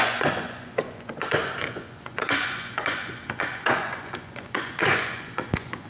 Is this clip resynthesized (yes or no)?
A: yes